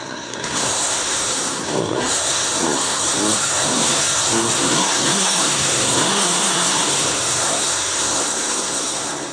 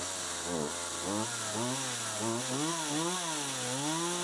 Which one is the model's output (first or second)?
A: first